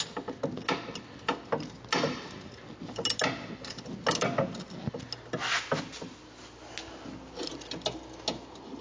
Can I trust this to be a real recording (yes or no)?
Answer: yes